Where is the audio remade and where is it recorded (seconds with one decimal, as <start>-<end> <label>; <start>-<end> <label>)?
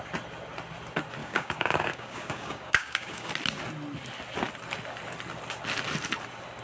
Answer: 0.0-1.2 recorded; 1.2-3.3 remade; 3.3-6.6 recorded